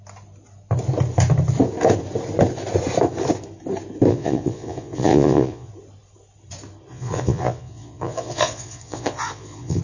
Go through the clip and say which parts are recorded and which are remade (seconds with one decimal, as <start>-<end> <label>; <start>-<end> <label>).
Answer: 0.0-4.1 recorded; 4.1-5.7 remade; 5.7-6.9 recorded; 6.9-9.8 remade